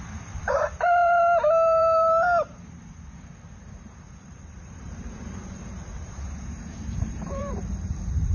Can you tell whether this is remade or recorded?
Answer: remade